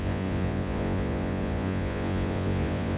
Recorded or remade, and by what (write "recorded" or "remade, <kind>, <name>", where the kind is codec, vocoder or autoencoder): remade, vocoder, Vocos